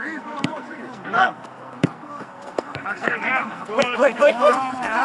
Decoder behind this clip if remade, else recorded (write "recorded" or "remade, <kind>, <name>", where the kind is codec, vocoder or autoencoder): remade, codec, SNAC